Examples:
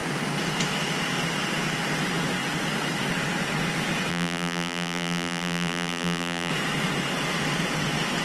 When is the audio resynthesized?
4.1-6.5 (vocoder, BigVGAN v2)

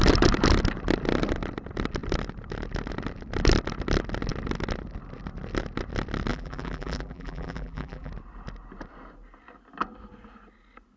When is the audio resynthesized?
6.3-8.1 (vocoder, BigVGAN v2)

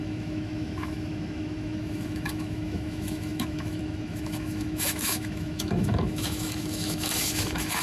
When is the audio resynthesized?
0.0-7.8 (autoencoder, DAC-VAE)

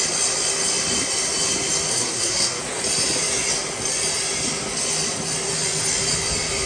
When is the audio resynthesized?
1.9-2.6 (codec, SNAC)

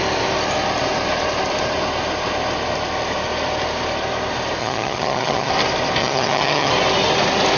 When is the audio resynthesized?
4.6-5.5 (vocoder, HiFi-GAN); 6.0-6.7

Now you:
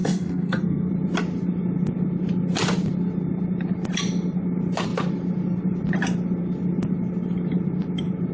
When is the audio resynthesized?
0.0-0.9 (codec, SNAC)

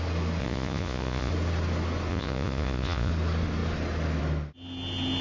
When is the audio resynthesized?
0.4-1.3 (vocoder, Vocos); 2.1-3.1

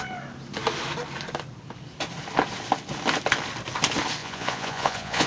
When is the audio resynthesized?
4.2-5.3 (vocoder, Vocos)